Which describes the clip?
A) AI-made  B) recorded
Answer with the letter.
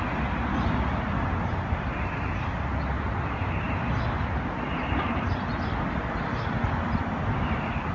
B